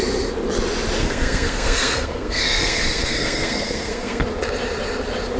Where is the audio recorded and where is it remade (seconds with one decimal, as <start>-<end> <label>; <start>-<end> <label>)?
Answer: 0.0-1.0 recorded; 1.0-4.2 remade; 4.2-5.4 recorded